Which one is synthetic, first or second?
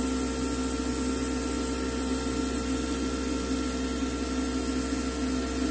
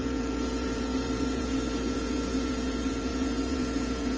second